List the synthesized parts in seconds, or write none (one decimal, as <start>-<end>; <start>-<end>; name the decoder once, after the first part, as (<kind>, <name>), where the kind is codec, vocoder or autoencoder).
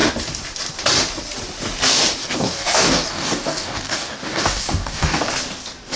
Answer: 2.2-5.3 (codec, DAC)